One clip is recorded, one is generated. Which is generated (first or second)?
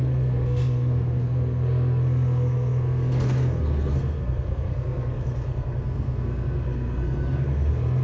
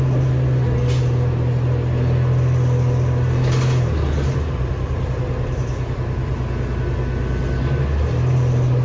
first